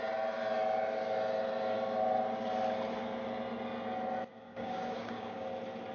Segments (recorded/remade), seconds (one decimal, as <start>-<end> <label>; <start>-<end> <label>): 0.0-4.3 recorded; 4.3-5.5 remade; 5.5-5.9 recorded